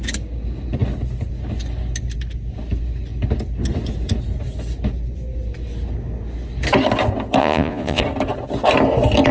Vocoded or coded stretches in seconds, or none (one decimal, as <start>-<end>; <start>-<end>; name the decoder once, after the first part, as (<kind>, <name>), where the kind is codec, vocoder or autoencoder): 7.4-8.0 (vocoder, Vocos)